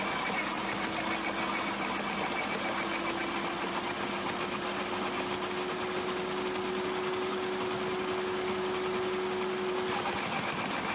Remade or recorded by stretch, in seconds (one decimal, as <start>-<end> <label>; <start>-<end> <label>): 0.0-10.9 recorded